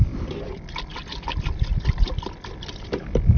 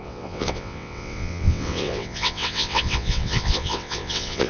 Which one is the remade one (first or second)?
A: second